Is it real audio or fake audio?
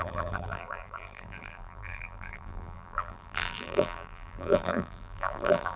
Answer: fake